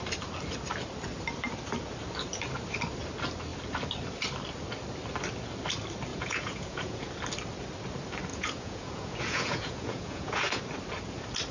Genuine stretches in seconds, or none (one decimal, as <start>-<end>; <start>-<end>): 0.0-6.1; 7.1-8.3; 10.6-11.5